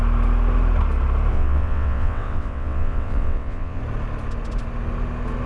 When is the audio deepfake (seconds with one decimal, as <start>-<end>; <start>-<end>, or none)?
1.3-3.8